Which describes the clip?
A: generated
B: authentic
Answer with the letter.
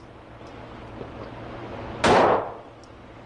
B